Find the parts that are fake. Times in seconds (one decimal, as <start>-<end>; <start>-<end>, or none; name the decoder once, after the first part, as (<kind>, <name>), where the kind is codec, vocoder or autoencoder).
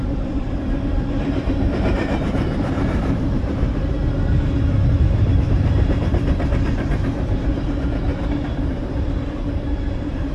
0.0-4.0 (vocoder, BigVGAN v2); 5.2-10.3